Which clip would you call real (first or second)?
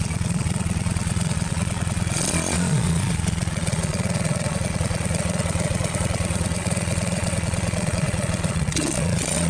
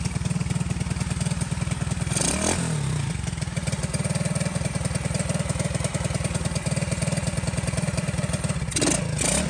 second